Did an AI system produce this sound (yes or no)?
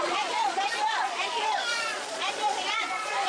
yes